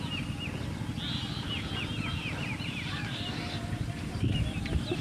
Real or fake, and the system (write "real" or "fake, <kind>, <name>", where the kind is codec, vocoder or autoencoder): real